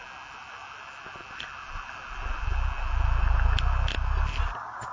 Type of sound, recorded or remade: recorded